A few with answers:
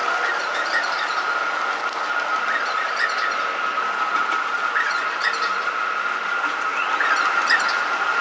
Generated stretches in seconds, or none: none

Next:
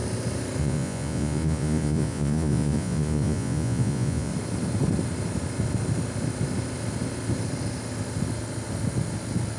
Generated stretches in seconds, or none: 0.6-4.3 (vocoder, Vocos)

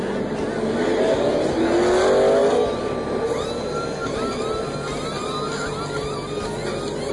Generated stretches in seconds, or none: none

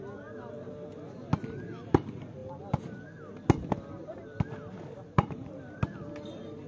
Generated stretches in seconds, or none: none

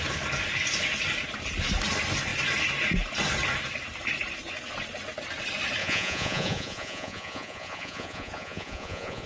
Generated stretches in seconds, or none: 5.8-9.3 (vocoder, Vocos)

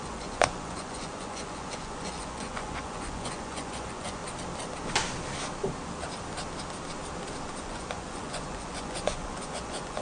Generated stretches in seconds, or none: 0.0-4.2 (vocoder, Vocos); 7.6-10.0

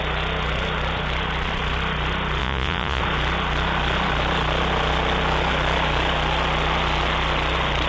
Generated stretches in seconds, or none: 2.4-3.0 (vocoder, Vocos)